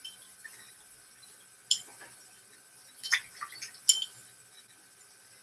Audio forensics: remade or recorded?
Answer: recorded